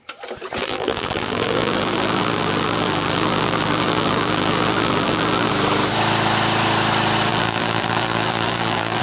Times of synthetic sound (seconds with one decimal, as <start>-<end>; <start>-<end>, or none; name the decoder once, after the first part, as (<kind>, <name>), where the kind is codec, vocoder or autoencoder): 0.6-5.5 (vocoder, BigVGAN v2); 7.3-9.0